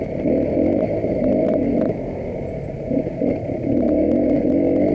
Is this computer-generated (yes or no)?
yes